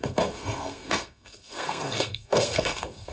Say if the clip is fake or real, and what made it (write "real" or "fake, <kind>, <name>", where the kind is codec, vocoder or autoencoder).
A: fake, codec, SNAC